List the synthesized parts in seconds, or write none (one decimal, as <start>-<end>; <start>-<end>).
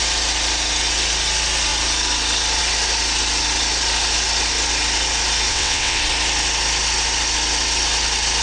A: 5.5-6.0